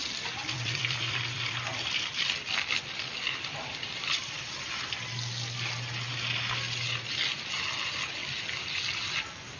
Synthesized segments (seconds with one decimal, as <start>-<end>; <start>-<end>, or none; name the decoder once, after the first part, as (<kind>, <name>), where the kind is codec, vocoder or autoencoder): 0.0-4.8 (vocoder, BigVGAN v2)